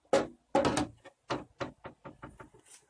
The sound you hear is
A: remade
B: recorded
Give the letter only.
B